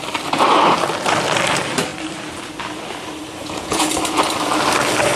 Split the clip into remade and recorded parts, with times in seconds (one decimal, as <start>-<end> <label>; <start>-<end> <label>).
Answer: 0.0-3.4 recorded; 3.4-3.9 remade; 3.9-5.2 recorded